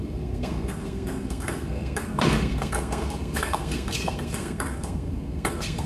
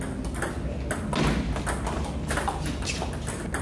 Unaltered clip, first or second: second